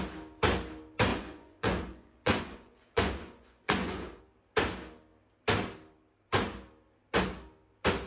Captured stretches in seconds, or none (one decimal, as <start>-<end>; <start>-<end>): 0.0-1.1; 4.2-8.1